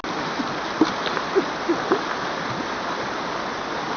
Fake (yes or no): no